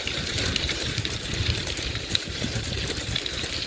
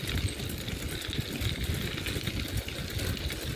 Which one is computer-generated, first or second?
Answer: first